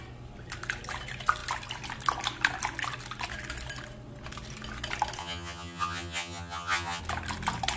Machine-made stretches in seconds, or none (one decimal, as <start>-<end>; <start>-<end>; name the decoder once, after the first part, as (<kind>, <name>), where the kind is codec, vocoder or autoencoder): 5.2-7.0 (vocoder, HiFi-GAN)